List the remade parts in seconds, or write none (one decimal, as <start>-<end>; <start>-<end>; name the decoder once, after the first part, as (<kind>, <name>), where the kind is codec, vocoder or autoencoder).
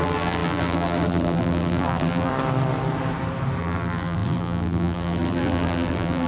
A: 0.0-2.3 (vocoder, BigVGAN v2); 3.6-6.3